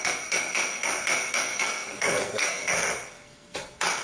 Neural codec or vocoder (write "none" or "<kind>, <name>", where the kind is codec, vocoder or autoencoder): codec, SNAC